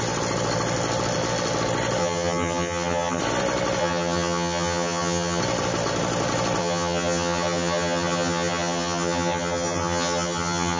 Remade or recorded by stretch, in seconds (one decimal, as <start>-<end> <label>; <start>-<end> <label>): 0.0-2.0 recorded; 2.0-3.2 remade; 3.2-3.8 recorded; 3.8-5.4 remade; 5.4-6.6 recorded; 6.6-10.8 remade